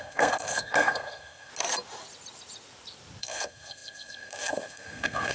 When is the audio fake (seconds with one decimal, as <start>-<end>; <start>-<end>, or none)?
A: 0.0-1.5; 3.2-5.3